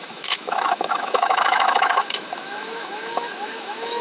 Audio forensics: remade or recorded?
remade